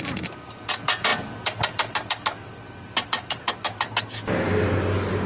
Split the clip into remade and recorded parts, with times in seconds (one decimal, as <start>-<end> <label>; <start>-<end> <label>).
0.0-5.3 recorded